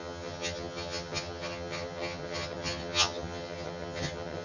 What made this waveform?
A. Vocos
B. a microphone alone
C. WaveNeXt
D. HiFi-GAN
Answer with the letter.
D